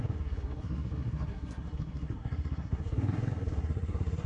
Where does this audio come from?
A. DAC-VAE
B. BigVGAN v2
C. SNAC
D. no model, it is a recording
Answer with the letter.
C